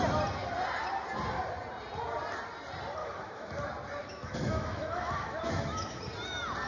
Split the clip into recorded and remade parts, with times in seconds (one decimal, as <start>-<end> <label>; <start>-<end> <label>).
0.0-3.0 recorded; 3.0-3.5 remade; 3.5-4.0 recorded; 4.0-6.0 remade; 6.0-6.7 recorded